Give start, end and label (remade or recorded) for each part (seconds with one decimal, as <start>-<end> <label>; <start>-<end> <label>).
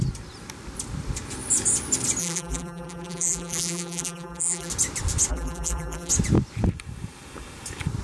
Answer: 0.0-2.2 recorded; 2.2-4.7 remade; 4.7-5.3 recorded; 5.3-6.1 remade; 6.1-8.0 recorded